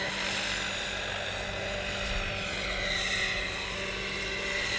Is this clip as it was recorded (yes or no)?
yes